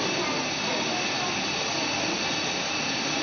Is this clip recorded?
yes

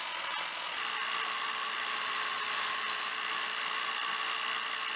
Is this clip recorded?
yes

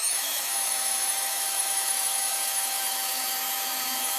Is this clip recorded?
no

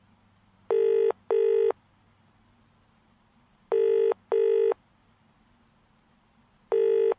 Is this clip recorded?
yes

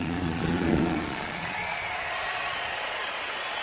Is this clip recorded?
no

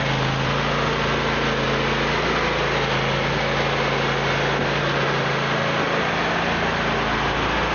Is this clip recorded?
yes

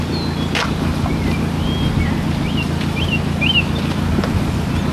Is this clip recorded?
yes